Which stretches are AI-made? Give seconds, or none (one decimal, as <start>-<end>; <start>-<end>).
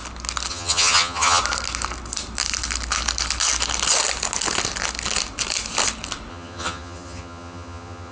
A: 0.5-1.4; 6.3-8.1